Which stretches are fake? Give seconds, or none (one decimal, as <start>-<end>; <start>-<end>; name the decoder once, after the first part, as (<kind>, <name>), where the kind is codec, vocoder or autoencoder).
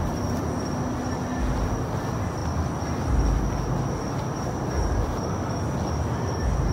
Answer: none